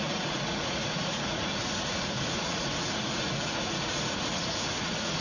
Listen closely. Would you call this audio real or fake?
fake